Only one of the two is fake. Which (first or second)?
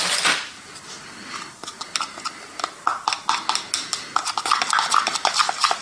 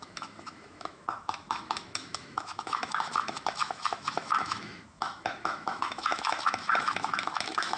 second